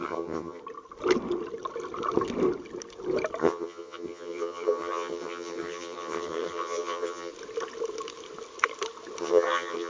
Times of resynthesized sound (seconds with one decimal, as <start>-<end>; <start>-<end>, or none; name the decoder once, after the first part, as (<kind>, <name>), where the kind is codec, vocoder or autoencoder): 0.0-0.6 (vocoder, HiFi-GAN); 3.4-7.3; 9.2-9.9